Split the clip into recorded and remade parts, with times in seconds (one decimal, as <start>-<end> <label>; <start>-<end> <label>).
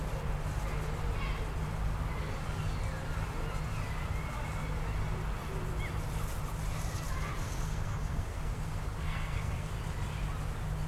0.0-7.4 recorded; 7.4-9.7 remade; 9.7-10.9 recorded